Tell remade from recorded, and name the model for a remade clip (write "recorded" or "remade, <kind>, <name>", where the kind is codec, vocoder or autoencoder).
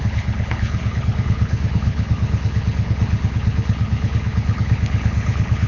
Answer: remade, codec, HILCodec